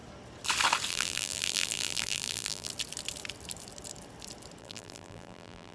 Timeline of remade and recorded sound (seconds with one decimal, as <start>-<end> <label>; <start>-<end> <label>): 0.0-0.9 recorded; 0.9-2.7 remade; 2.7-4.6 recorded; 4.6-5.7 remade

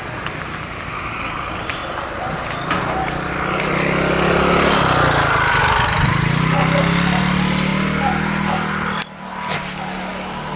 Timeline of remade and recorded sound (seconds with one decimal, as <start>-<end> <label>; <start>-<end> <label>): 0.0-10.6 recorded